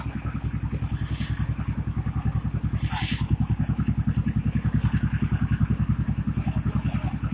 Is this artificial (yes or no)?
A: no